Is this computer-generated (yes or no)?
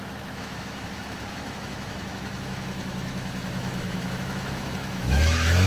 yes